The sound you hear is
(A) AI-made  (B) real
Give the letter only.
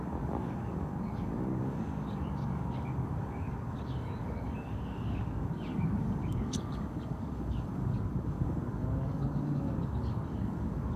A